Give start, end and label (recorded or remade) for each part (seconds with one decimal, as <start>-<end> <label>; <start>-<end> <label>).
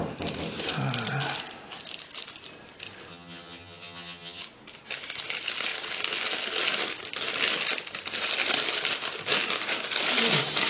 0.0-3.1 recorded; 3.1-4.4 remade; 4.4-10.7 recorded